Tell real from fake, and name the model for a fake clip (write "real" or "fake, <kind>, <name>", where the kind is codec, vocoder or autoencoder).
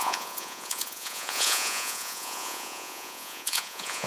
fake, vocoder, Vocos